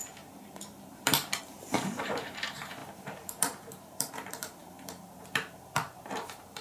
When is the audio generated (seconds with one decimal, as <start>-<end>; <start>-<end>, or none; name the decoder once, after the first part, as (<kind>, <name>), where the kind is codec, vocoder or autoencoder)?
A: 0.0-6.6 (vocoder, BigVGAN v2)